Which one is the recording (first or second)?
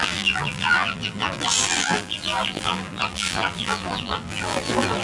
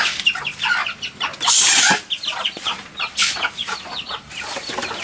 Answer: second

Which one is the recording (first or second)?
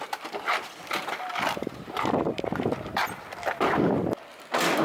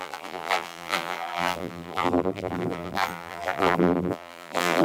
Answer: first